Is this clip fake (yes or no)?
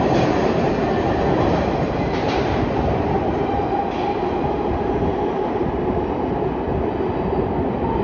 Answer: no